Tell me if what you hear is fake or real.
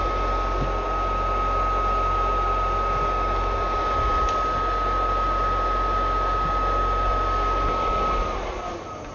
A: real